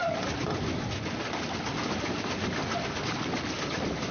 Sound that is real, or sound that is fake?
real